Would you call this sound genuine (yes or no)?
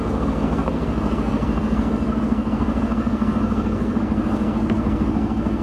no